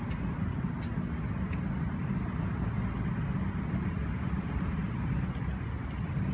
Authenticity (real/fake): real